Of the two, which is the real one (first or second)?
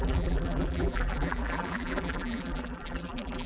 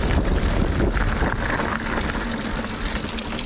second